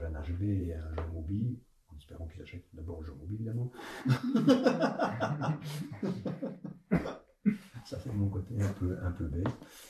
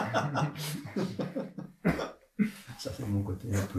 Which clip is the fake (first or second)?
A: first